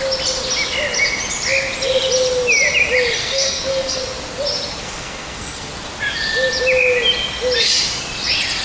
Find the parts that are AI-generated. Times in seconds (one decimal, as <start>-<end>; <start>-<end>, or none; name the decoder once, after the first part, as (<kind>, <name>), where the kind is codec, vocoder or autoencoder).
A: 3.2-4.0 (codec, SNAC); 4.8-5.7